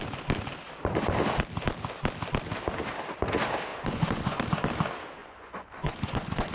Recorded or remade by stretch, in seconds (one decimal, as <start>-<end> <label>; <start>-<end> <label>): 0.0-3.7 recorded; 3.7-4.4 remade; 4.4-5.2 recorded; 5.2-6.5 remade